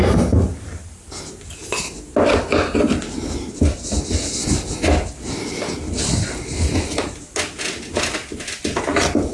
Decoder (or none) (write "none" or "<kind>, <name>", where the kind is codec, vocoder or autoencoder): none